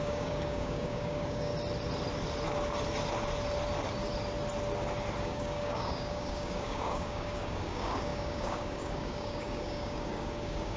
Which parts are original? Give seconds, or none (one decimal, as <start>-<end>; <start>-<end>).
1.5-5.2